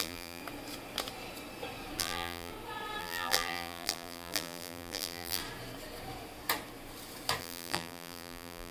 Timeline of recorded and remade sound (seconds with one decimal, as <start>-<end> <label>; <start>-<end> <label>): 0.0-0.4 remade; 0.4-2.0 recorded; 2.0-2.5 remade; 2.5-3.0 recorded; 3.0-5.4 remade; 5.4-7.4 recorded; 7.4-8.7 remade